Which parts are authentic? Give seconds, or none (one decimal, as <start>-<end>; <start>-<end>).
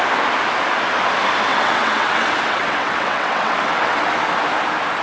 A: 0.0-1.5; 4.0-5.0